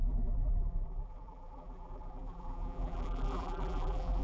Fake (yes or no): yes